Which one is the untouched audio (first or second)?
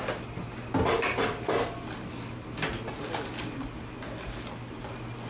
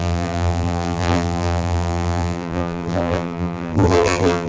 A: first